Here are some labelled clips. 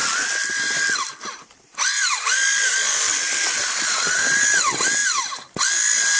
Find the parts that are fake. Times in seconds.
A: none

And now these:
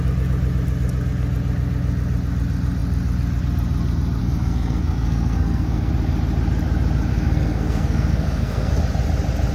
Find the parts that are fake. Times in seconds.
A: 4.2-5.9 (codec, SNAC); 7.1-8.8